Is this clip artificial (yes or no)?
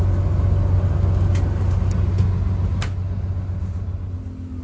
no